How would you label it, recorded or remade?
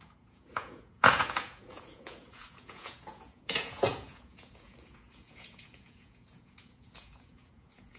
remade